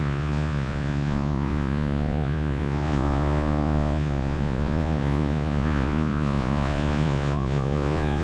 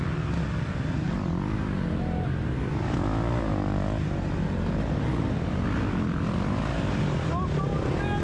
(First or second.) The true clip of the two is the second